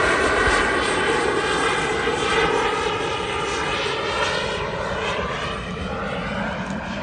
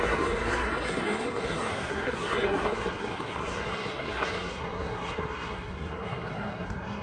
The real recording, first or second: first